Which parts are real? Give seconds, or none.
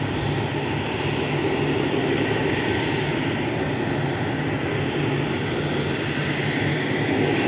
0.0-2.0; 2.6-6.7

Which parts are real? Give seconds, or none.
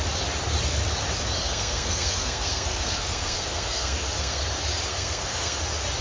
0.0-1.4; 4.4-4.9; 5.6-6.0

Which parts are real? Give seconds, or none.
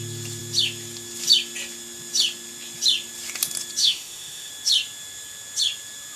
0.0-3.8; 4.5-6.2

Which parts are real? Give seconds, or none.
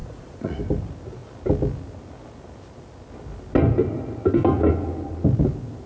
0.6-5.9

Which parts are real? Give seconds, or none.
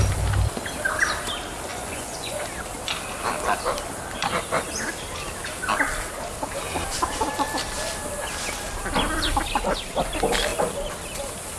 0.0-1.7; 2.4-11.6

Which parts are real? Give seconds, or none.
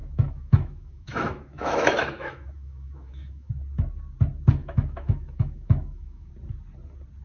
3.5-4.6; 6.3-7.2